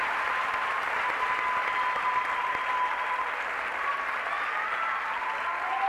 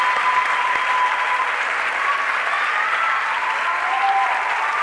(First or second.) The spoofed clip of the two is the second